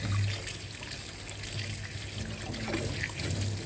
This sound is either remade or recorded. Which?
recorded